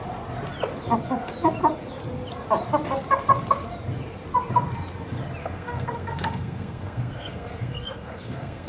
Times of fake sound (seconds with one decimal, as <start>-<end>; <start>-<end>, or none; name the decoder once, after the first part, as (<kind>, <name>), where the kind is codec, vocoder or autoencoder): 5.4-8.7 (codec, SNAC)